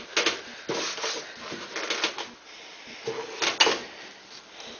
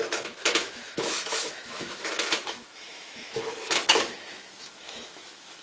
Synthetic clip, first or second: second